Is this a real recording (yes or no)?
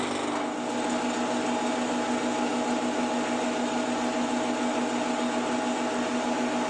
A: yes